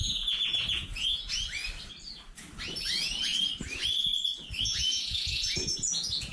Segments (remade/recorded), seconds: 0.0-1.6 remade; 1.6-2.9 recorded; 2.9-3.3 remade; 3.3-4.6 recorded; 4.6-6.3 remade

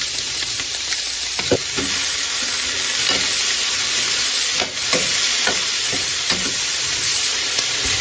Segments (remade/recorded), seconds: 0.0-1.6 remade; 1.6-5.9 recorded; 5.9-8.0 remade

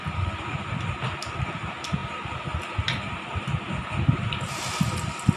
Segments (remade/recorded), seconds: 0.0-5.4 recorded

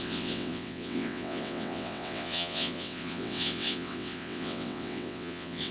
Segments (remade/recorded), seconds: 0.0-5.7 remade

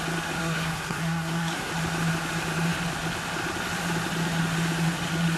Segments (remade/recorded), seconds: 0.0-0.4 recorded; 0.4-1.7 remade; 1.7-5.4 recorded